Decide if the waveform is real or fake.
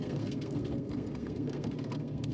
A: fake